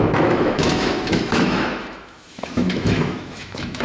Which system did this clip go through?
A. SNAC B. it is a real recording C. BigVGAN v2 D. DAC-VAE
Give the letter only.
D